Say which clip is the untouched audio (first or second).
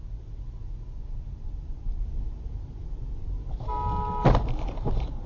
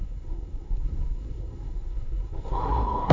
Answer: first